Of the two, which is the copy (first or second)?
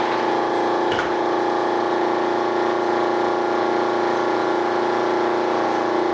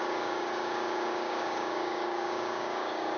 second